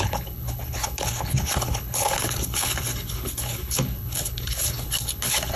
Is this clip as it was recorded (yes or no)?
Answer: no